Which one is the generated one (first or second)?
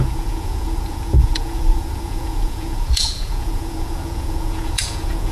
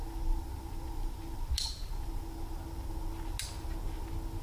first